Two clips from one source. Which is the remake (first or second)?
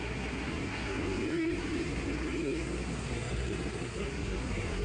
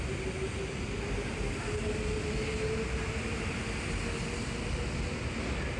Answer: first